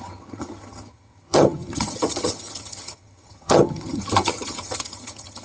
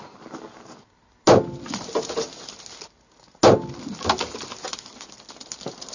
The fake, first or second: first